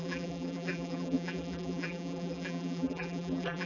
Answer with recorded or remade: remade